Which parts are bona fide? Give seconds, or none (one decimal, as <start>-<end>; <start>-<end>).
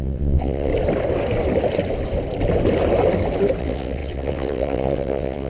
0.7-3.6